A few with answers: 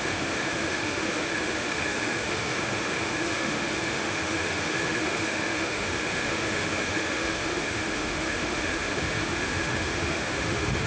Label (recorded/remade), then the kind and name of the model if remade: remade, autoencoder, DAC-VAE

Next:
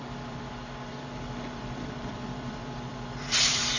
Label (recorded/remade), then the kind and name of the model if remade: remade, vocoder, BigVGAN v2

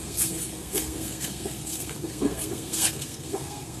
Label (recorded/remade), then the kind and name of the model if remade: remade, codec, SNAC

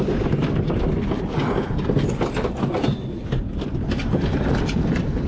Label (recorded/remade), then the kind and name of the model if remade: recorded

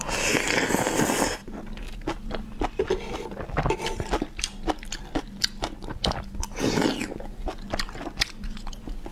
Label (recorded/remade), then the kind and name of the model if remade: recorded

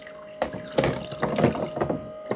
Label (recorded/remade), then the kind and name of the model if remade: recorded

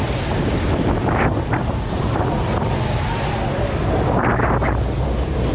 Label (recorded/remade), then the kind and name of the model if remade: remade, vocoder, BigVGAN v2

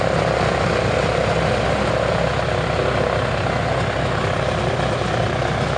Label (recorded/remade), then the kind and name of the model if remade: recorded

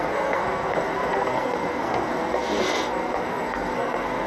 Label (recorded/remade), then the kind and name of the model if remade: remade, codec, SNAC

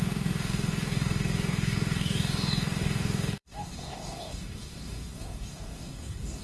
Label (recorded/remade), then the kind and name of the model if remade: remade, codec, DAC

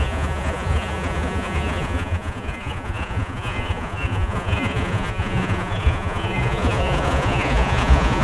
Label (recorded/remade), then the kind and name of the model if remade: remade, vocoder, Vocos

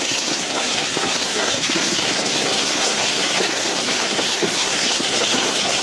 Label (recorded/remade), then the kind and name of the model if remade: remade, codec, SNAC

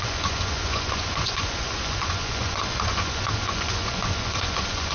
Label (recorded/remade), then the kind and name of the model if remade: remade, vocoder, Vocos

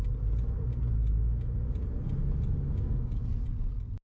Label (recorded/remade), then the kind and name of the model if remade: recorded